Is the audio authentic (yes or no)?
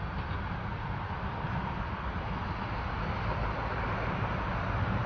yes